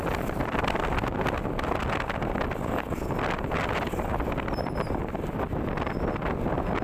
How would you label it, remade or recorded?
recorded